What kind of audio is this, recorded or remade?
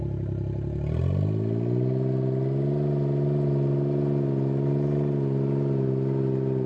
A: recorded